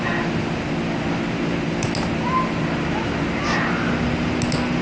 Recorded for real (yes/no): yes